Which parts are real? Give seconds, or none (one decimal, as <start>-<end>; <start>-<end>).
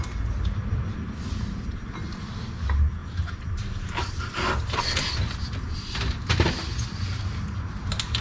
0.0-3.0; 4.8-8.2